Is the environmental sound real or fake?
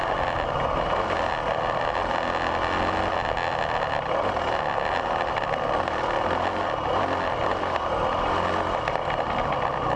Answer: real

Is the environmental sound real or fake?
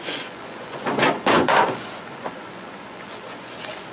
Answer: fake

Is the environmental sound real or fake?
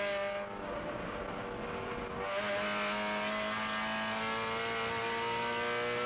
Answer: real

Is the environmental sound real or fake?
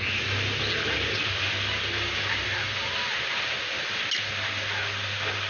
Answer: real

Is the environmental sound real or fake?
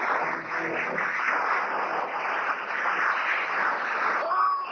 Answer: real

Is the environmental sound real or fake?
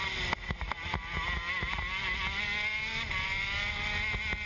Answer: real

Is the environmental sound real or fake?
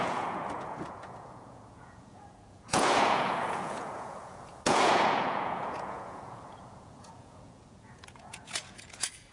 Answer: fake